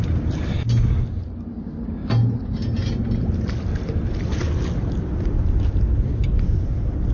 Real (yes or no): yes